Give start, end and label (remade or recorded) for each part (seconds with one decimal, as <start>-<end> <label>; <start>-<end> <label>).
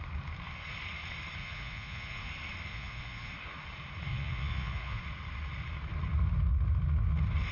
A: 0.0-1.4 recorded; 1.4-2.3 remade; 2.3-2.7 recorded; 2.7-3.3 remade; 3.3-4.1 recorded; 4.1-5.0 remade; 5.0-7.5 recorded